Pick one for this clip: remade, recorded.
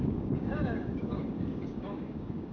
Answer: remade